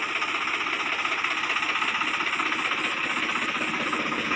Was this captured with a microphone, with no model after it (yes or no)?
yes